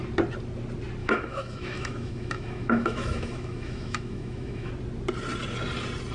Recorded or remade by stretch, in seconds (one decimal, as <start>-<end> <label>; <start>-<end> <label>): 0.0-1.0 recorded; 1.0-4.7 remade; 4.7-6.1 recorded